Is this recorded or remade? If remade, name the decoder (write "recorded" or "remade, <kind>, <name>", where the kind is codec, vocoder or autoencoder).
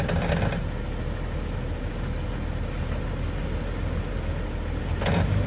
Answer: recorded